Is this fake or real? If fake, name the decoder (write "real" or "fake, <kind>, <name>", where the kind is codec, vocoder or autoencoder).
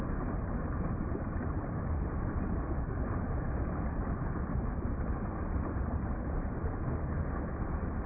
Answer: real